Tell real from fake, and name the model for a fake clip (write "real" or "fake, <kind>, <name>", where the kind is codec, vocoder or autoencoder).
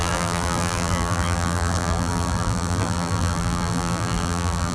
fake, vocoder, BigVGAN v2